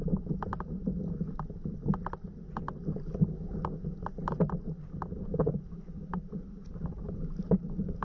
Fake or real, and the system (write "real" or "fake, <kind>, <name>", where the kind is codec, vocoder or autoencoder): real